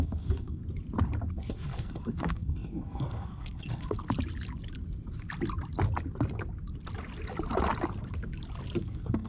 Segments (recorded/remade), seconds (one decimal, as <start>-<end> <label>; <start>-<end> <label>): 0.0-0.6 remade; 0.6-1.3 recorded; 1.3-4.0 remade; 4.0-8.8 recorded; 8.8-9.3 remade